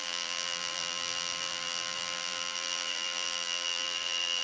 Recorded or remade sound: remade